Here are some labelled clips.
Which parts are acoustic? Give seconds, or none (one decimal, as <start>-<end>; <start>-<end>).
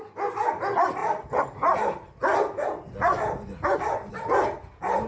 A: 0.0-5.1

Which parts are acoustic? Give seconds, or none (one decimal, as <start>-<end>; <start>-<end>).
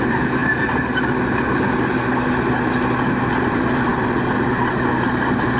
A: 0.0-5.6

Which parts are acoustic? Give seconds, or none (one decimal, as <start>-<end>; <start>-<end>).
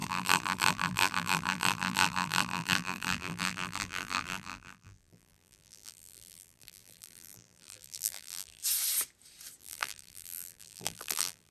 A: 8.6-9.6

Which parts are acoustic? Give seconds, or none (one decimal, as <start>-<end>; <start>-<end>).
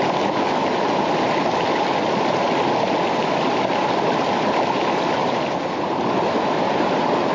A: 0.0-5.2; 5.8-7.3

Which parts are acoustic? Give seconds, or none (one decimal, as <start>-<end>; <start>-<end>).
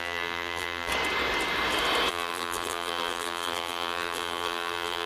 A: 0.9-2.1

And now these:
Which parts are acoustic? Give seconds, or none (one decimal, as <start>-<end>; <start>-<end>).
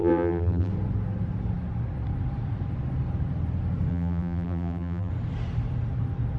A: 0.7-3.9; 5.1-6.4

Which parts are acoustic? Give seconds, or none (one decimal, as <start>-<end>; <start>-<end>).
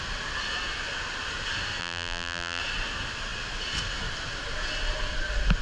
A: 0.0-1.8; 2.6-5.6